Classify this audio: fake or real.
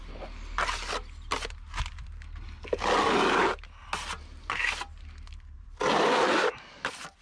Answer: real